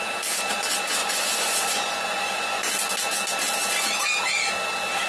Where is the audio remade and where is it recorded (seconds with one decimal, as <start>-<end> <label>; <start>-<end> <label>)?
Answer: 0.0-1.0 recorded; 1.0-2.7 remade; 2.7-5.1 recorded

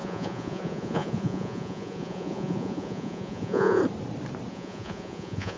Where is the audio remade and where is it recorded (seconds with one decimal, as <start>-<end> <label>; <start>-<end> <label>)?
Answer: 0.0-3.8 remade; 3.8-4.5 recorded; 4.5-5.6 remade